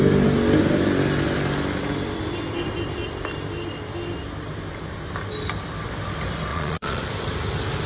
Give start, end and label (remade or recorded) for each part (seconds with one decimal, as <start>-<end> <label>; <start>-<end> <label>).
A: 0.0-6.5 recorded; 6.5-7.0 remade; 7.0-7.9 recorded